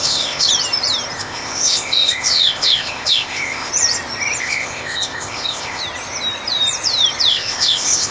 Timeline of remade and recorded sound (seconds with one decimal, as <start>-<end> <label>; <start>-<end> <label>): 0.0-0.5 remade; 0.5-1.2 recorded; 1.2-3.7 remade; 3.7-4.4 recorded; 4.4-5.8 remade; 5.8-7.3 recorded; 7.3-8.1 remade